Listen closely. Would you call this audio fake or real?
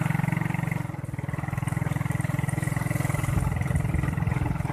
real